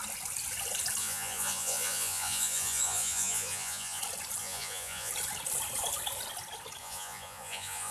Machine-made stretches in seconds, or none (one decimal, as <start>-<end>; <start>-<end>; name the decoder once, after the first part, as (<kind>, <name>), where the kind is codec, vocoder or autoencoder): 1.0-4.0 (vocoder, Vocos); 4.4-5.1; 6.8-7.9